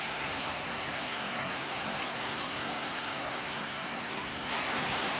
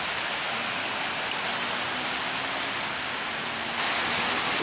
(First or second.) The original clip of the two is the second